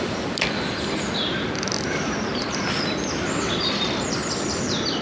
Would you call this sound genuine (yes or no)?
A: no